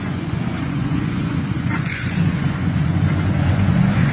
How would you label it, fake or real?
fake